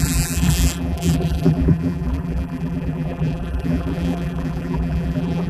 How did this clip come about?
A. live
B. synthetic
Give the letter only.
B